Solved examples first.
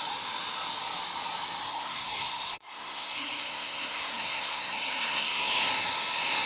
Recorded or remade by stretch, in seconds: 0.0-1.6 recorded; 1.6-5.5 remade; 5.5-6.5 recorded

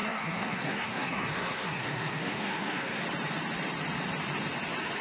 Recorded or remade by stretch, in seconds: 0.0-3.0 remade; 3.0-5.0 recorded

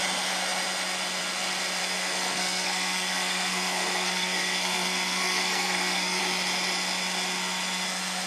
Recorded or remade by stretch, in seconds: 0.0-1.8 recorded; 1.8-6.2 remade; 6.2-8.3 recorded

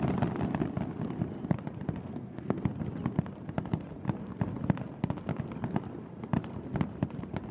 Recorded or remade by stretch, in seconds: 0.0-2.0 recorded; 2.0-2.6 remade; 2.6-7.5 recorded

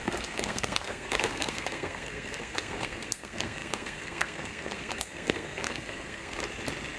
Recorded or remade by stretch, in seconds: 0.0-6.4 remade; 6.4-7.0 recorded